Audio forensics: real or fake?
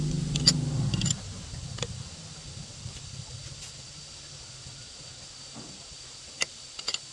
real